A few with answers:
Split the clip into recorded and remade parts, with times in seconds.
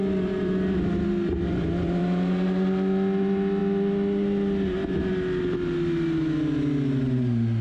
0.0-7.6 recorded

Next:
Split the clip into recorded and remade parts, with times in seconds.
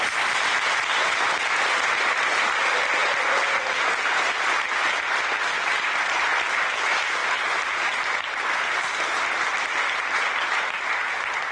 0.0-7.2 recorded; 7.2-8.2 remade; 8.2-11.5 recorded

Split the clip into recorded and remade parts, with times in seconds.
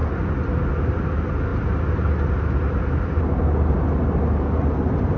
0.0-5.2 recorded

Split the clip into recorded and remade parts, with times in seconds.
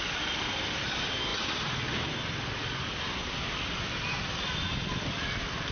0.0-5.7 recorded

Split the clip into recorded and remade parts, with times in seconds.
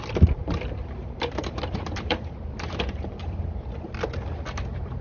0.0-0.4 recorded; 0.4-3.4 remade; 3.4-5.0 recorded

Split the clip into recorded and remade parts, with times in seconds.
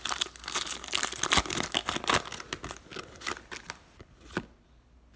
0.0-5.2 recorded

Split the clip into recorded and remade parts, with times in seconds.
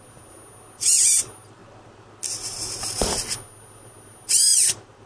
0.0-1.6 remade; 1.6-3.4 recorded; 3.4-5.1 remade